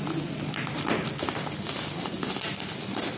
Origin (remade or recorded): recorded